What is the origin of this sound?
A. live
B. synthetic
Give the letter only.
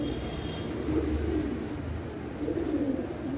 A